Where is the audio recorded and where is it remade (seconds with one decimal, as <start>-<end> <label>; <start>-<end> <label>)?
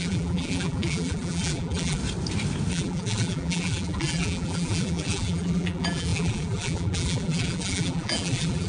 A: 0.0-2.0 remade; 2.0-2.7 recorded; 2.7-8.7 remade